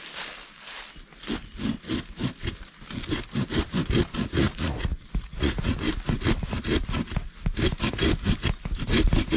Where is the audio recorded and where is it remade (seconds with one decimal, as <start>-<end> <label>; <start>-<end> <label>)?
0.0-4.2 recorded; 4.2-5.7 remade; 5.7-9.4 recorded